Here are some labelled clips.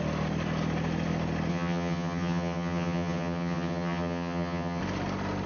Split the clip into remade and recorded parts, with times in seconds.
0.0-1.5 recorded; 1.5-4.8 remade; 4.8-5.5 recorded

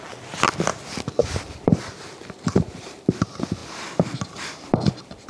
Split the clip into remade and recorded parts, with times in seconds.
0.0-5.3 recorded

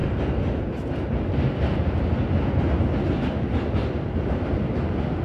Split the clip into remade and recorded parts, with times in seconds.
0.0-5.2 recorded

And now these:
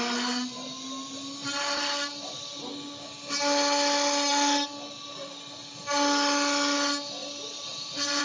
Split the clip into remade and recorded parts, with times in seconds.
0.0-8.2 recorded